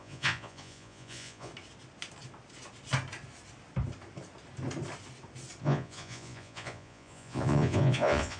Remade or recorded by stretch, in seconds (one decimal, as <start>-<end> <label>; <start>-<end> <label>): 0.0-1.5 remade; 1.5-5.6 recorded; 5.6-8.4 remade

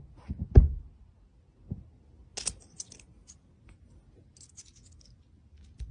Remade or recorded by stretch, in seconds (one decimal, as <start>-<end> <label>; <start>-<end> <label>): 0.0-5.9 recorded

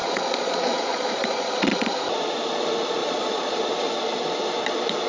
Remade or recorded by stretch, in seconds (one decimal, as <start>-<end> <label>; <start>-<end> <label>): 0.0-1.9 remade; 1.9-3.0 recorded; 3.0-3.6 remade; 3.6-5.1 recorded

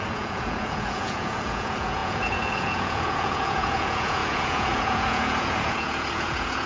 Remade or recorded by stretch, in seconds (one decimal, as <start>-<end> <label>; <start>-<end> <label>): 0.0-6.7 remade

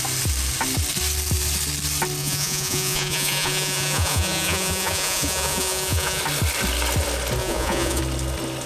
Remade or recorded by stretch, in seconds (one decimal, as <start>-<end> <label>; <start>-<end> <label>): 0.0-2.2 recorded; 2.2-6.2 remade; 6.2-7.4 recorded; 7.4-8.0 remade; 8.0-8.7 recorded

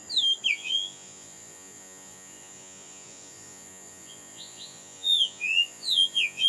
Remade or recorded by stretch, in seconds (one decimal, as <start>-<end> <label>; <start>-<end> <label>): 0.0-0.5 recorded; 0.5-6.5 remade

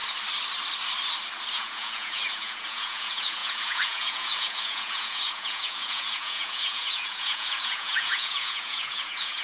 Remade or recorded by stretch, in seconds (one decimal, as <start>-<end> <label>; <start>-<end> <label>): 0.0-1.5 recorded; 1.5-9.4 remade